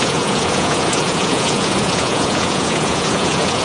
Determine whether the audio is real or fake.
fake